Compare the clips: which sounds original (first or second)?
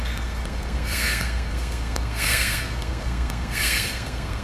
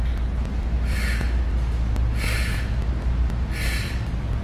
second